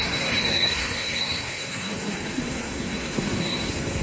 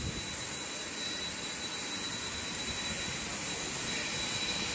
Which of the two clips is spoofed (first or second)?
first